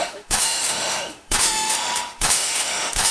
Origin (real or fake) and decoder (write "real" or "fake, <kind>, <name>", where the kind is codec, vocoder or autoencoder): fake, autoencoder, DAC-VAE